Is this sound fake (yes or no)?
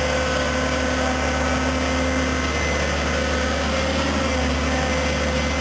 no